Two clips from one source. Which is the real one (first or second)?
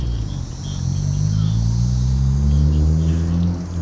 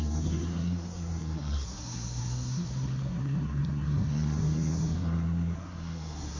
first